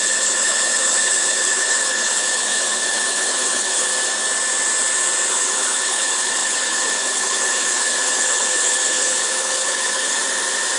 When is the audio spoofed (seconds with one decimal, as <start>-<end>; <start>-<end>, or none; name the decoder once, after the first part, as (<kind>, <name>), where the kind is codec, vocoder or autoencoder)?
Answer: 0.0-3.9 (codec, HILCodec); 5.3-10.2